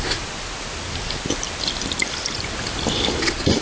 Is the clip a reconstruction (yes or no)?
no